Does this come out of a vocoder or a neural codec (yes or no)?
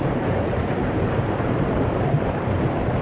yes